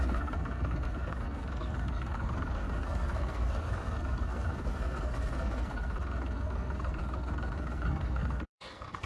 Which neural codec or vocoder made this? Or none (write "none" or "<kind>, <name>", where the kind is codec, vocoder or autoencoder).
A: codec, SNAC